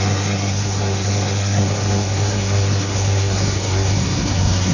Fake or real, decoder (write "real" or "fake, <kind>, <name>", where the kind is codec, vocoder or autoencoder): fake, codec, SNAC